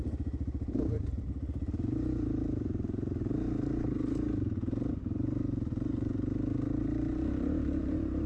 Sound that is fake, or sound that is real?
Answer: fake